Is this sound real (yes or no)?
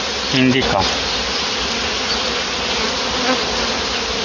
yes